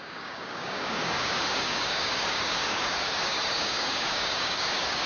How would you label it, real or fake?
fake